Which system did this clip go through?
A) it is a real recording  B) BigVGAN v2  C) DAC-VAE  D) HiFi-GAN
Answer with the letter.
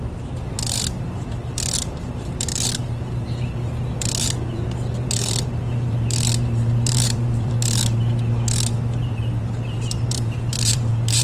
B